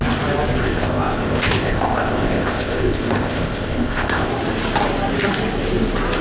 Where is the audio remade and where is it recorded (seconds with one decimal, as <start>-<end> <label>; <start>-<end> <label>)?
0.0-0.6 recorded; 0.6-4.3 remade; 4.3-6.2 recorded